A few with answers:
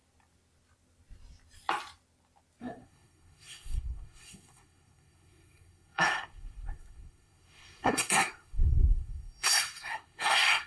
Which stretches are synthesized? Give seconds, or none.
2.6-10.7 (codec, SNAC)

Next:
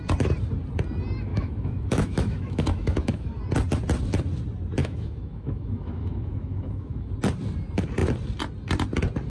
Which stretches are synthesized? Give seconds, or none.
1.3-3.3 (autoencoder, DAC-VAE); 4.8-7.1

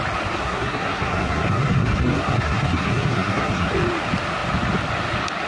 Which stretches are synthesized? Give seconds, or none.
0.4-3.7 (codec, SNAC)

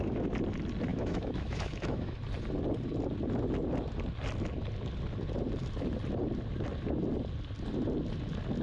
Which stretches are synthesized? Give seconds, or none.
0.9-2.2 (autoencoder, DAC-VAE)